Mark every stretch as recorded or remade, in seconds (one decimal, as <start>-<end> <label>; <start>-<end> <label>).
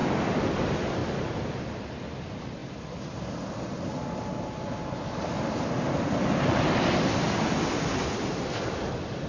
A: 0.0-0.5 remade; 0.5-1.0 recorded; 1.0-1.8 remade; 1.8-9.3 recorded